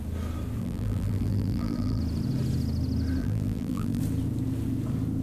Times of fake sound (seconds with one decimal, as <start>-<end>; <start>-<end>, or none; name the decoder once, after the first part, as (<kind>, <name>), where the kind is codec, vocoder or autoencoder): 0.6-2.0 (vocoder, BigVGAN v2); 3.2-4.0